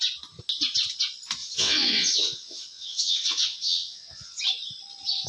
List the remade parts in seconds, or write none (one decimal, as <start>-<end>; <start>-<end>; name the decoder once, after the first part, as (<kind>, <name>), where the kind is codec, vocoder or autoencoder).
1.4-4.4 (vocoder, WaveNeXt)